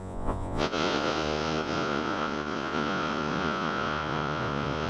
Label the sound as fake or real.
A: fake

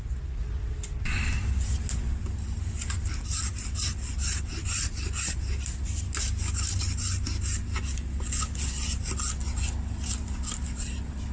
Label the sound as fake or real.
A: real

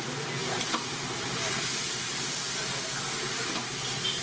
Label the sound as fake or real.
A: real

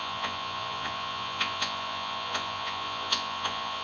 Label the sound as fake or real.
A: fake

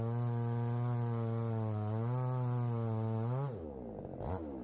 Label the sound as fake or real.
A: real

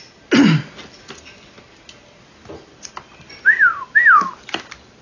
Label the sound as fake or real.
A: real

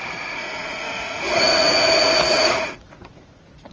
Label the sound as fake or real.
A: fake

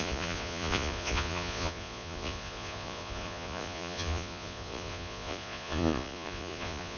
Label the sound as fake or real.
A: fake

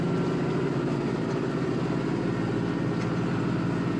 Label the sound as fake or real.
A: real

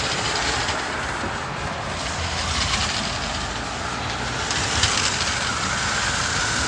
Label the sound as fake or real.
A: real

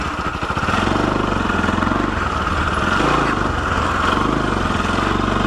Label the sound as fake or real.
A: real